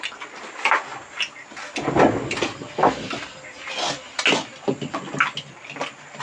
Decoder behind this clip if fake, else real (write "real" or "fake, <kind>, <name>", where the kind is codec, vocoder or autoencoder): real